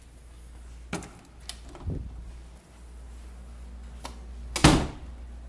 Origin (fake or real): real